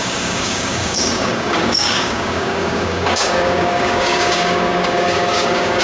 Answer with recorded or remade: remade